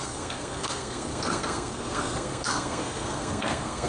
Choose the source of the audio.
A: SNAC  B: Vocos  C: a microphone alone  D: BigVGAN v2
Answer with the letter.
A